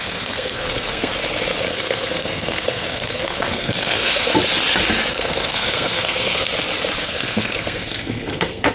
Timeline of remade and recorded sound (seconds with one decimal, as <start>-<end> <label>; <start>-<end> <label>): 0.0-1.1 remade; 1.1-1.6 recorded; 1.6-4.3 remade; 4.3-5.1 recorded; 5.1-6.5 remade; 6.5-7.0 recorded; 7.0-8.7 remade